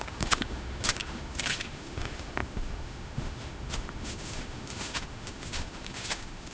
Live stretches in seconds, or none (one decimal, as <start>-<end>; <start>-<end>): none

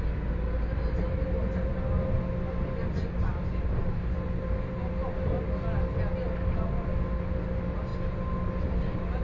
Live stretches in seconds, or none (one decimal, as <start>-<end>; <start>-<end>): 0.0-9.2

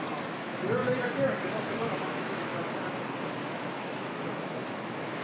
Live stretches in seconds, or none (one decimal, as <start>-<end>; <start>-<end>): 0.8-1.7; 2.5-3.2

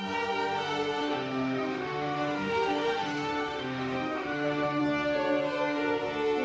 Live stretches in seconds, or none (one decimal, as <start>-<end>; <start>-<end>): 0.0-1.0; 4.8-6.4

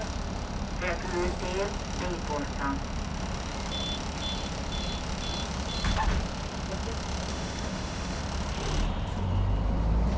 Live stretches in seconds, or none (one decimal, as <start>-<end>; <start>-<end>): 0.0-7.3; 8.2-10.2

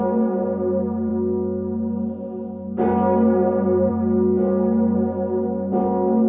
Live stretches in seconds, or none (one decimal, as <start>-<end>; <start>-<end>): 0.0-6.3